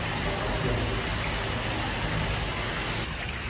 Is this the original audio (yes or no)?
yes